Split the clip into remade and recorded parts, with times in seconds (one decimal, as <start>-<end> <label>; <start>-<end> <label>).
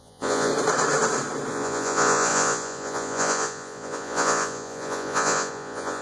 0.0-0.5 remade; 0.5-1.5 recorded; 1.5-6.0 remade